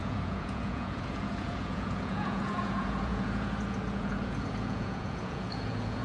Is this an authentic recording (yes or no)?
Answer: no